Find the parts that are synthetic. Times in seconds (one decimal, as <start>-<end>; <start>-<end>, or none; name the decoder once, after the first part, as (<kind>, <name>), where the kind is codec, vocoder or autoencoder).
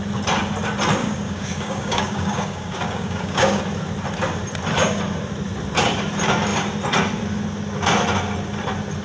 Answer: 1.0-3.6 (codec, DAC)